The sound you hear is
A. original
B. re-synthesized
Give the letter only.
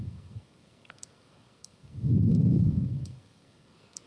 B